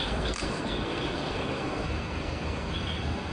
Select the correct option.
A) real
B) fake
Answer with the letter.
B